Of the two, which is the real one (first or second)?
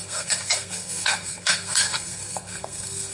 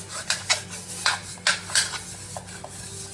second